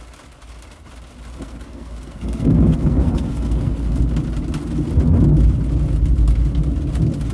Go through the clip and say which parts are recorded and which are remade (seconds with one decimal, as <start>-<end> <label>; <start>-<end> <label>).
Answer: 0.0-1.3 recorded; 1.3-4.0 remade; 4.0-7.3 recorded